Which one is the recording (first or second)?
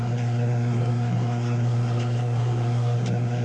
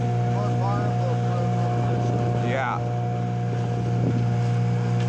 second